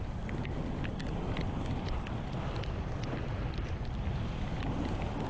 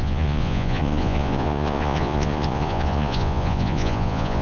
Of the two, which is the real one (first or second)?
first